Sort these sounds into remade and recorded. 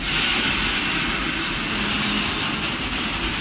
recorded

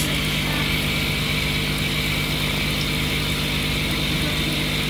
recorded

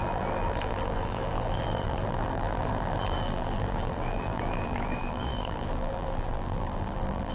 remade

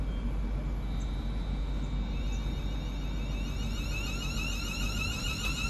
recorded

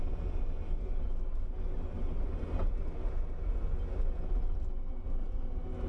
recorded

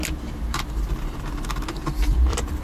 remade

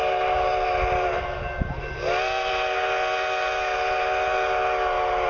recorded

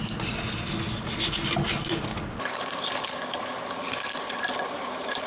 recorded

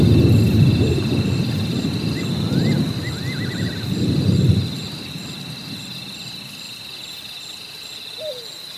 recorded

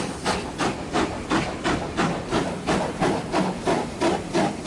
remade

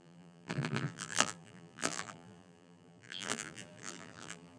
remade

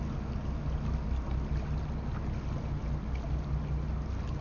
recorded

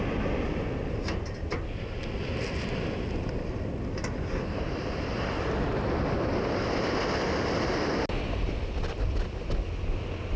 recorded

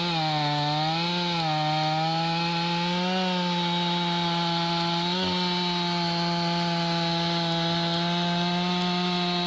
recorded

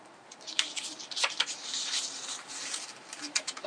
remade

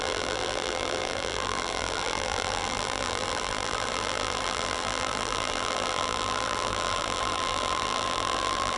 remade